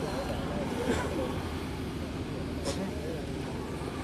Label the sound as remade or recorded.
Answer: recorded